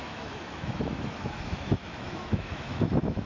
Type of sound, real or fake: fake